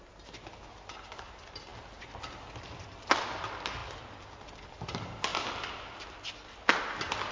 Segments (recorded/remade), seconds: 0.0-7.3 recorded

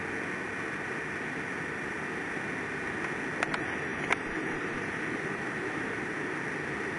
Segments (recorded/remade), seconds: 0.0-3.9 recorded; 3.9-6.4 remade; 6.4-7.0 recorded

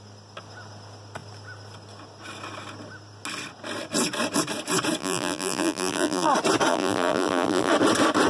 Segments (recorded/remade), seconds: 0.0-5.0 recorded; 5.0-6.3 remade; 6.3-6.7 recorded; 6.7-7.7 remade; 7.7-8.3 recorded

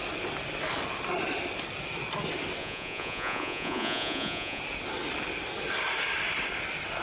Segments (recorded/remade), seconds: 0.0-2.6 recorded; 2.6-4.6 remade; 4.6-7.0 recorded

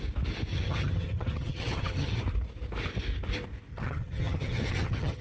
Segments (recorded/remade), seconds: 0.0-0.5 recorded; 0.5-2.2 remade; 2.2-3.7 recorded; 3.7-5.2 remade